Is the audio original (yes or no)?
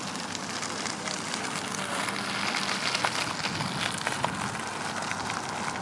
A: yes